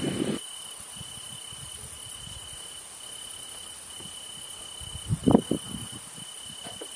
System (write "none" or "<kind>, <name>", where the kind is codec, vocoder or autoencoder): none